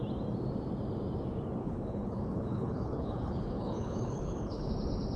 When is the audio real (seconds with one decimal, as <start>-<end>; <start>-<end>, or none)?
0.0-1.6; 4.7-5.2